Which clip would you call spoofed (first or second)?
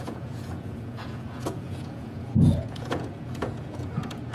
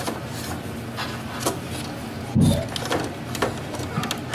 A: first